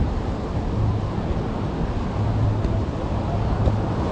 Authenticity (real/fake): real